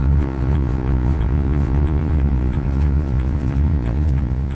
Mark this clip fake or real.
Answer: fake